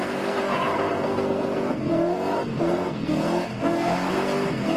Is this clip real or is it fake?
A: fake